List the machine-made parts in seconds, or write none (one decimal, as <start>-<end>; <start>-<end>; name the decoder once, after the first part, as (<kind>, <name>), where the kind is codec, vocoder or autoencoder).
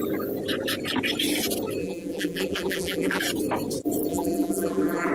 1.8-3.2 (vocoder, BigVGAN v2); 4.1-5.1